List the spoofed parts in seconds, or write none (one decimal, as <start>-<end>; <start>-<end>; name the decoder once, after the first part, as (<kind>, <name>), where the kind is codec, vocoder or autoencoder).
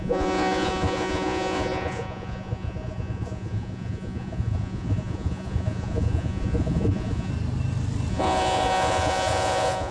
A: 0.0-7.3 (vocoder, Vocos); 8.1-9.9